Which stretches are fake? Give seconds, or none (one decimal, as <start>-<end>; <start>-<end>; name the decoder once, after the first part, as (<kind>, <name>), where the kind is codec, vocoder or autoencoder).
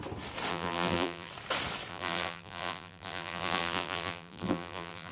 0.5-1.3 (vocoder, BigVGAN v2); 1.9-5.1